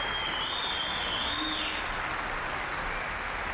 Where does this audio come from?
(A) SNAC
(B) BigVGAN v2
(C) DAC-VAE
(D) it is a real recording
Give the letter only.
D